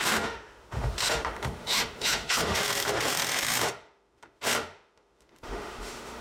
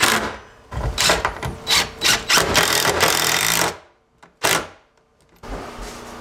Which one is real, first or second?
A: second